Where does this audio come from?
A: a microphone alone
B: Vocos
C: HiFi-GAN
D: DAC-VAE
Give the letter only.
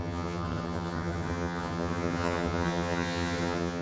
C